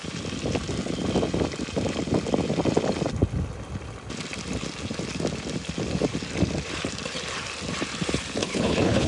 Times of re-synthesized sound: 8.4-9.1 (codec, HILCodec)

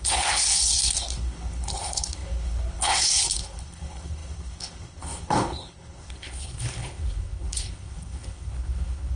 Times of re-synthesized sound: 0.0-9.2 (codec, HILCodec)

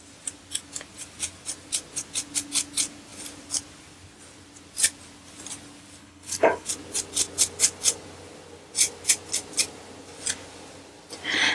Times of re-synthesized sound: 6.0-6.7 (codec, HILCodec)

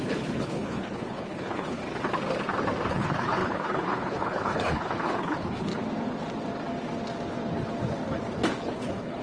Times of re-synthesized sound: 0.0-1.8 (codec, HILCodec); 2.9-5.7; 8.6-9.2

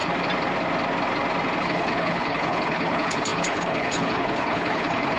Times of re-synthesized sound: 1.6-5.2 (codec, HILCodec)

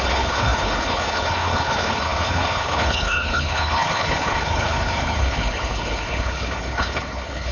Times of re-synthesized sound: 0.0-7.5 (codec, HILCodec)